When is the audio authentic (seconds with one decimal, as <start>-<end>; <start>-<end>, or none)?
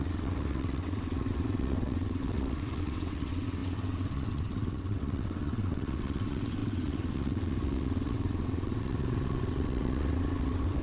none